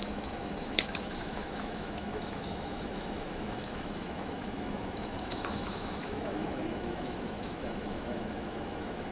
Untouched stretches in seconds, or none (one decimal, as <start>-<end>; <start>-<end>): none